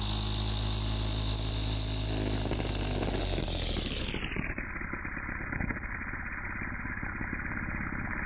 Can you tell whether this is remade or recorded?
recorded